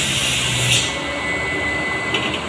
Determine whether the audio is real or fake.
real